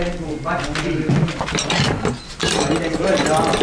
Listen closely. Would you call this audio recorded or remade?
recorded